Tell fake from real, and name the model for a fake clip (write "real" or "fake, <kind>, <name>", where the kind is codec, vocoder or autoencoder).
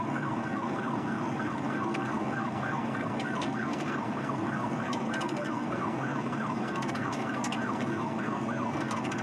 fake, codec, SNAC